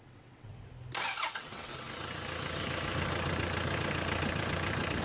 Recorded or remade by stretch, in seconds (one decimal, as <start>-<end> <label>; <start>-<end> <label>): 0.0-0.5 remade; 0.5-1.2 recorded; 1.2-1.7 remade; 1.7-5.0 recorded